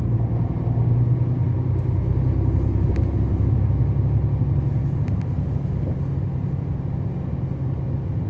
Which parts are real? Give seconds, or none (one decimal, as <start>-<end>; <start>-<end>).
0.0-8.3